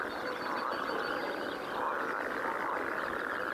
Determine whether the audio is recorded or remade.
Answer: recorded